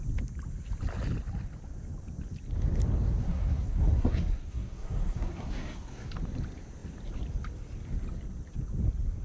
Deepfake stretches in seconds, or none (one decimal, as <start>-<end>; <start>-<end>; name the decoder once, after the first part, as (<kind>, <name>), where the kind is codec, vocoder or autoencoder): 3.2-6.1 (codec, SNAC)